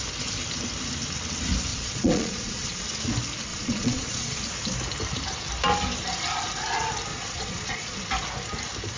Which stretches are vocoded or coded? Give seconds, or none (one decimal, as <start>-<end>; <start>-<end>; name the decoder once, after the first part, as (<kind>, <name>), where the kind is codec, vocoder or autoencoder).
1.7-2.8 (vocoder, Vocos); 3.5-4.4; 7.1-8.0